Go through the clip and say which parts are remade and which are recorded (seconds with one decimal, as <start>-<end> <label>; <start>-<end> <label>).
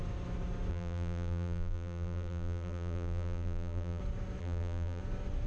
0.0-0.7 recorded; 0.7-4.0 remade; 4.0-4.4 recorded; 4.4-5.0 remade; 5.0-5.5 recorded